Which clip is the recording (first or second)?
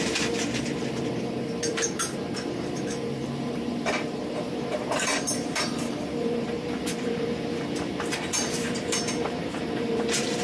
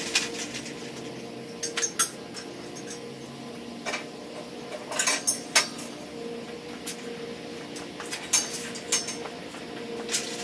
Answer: second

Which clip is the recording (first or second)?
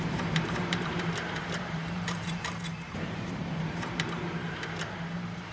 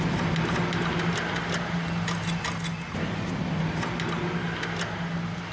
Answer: second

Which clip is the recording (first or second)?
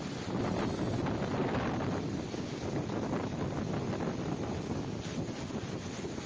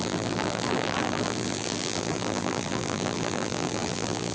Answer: first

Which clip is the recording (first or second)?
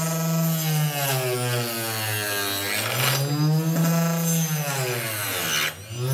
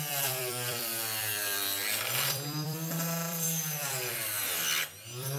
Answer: first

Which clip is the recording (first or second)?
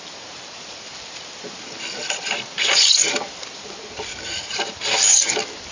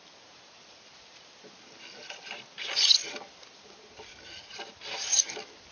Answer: second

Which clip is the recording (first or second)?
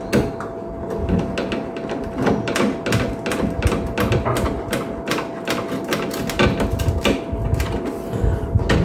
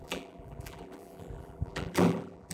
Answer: first